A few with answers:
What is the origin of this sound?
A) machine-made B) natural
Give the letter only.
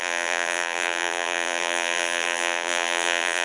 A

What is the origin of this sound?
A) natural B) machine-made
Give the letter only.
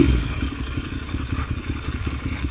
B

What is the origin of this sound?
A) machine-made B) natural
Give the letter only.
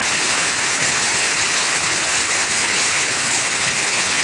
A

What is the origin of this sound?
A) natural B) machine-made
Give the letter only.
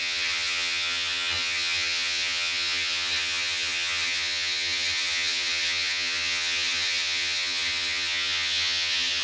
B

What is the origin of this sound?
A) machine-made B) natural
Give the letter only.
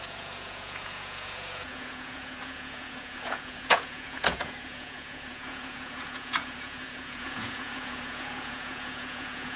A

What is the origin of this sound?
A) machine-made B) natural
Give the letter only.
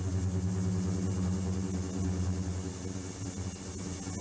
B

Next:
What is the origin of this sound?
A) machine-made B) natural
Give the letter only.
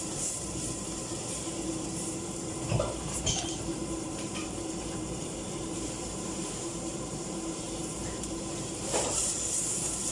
A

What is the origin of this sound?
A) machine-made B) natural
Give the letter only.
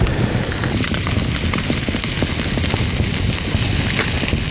B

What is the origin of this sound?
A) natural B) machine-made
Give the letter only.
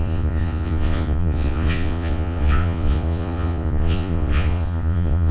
B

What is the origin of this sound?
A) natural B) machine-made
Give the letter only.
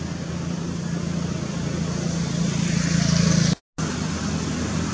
A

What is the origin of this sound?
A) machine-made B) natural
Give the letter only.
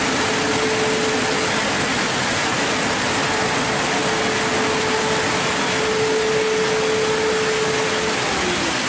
B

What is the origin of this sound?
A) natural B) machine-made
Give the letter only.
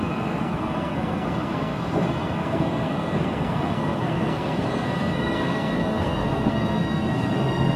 B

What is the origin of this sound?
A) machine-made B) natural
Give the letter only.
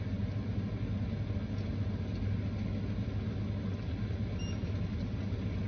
B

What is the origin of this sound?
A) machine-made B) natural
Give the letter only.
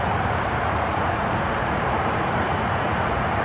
A